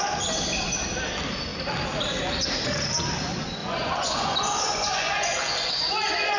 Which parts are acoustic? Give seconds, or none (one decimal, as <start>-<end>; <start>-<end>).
0.0-3.6